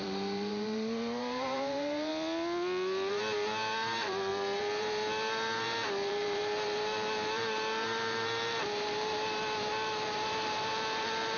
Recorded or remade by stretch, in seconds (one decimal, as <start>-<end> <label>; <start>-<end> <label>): 0.0-2.1 remade; 2.1-3.1 recorded; 3.1-11.4 remade